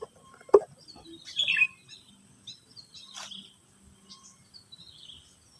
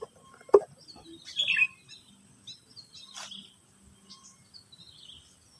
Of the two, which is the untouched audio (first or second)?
second